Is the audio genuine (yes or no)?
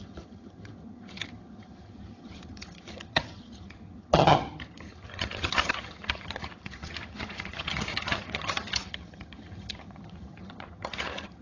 no